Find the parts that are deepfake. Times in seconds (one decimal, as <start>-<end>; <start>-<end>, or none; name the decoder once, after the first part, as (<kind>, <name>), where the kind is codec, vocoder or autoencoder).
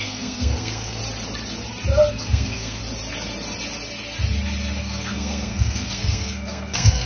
0.0-1.0 (codec, SNAC); 2.1-2.8; 4.8-7.0